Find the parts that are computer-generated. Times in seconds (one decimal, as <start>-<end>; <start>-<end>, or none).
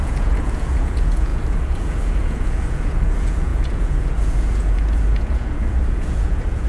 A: 0.0-6.7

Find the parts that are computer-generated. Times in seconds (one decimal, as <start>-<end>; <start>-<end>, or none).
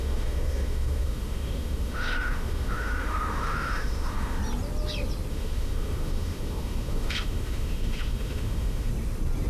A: 0.0-4.4; 5.3-8.9